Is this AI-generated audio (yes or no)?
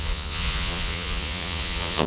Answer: yes